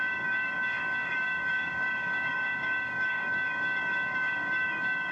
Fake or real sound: fake